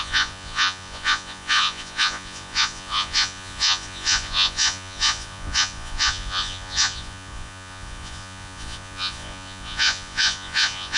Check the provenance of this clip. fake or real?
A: fake